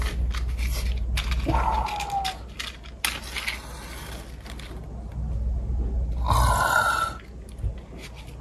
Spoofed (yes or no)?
no